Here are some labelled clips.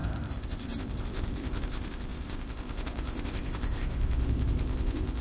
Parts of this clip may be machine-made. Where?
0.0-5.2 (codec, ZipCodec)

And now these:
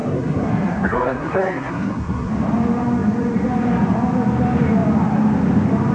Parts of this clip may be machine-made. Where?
0.0-2.3 (codec, SNAC)

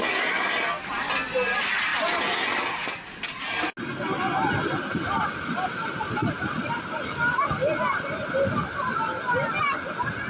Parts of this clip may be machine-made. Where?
1.9-2.9 (vocoder, BigVGAN v2)

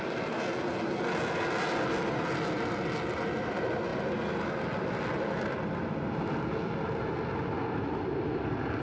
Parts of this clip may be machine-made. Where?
none

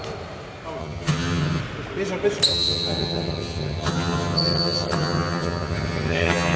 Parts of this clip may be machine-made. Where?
0.8-1.6 (vocoder, HiFi-GAN); 2.5-6.6

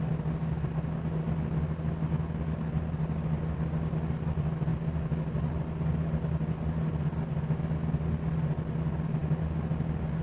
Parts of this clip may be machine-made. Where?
none

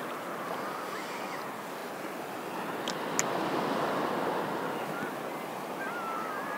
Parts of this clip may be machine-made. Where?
none

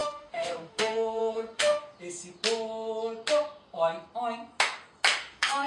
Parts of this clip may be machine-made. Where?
0.0-1.8 (autoencoder, DAC-VAE); 5.2-5.7